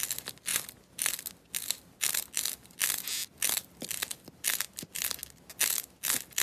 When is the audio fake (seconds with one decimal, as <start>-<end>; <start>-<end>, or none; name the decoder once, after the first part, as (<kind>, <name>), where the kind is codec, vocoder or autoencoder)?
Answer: none